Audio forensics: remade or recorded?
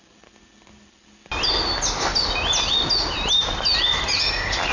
recorded